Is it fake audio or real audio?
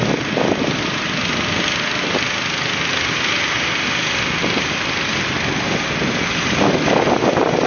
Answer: real